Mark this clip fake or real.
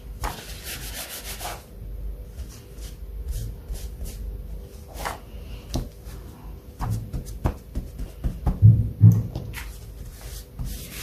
real